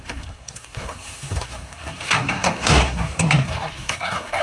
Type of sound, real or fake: fake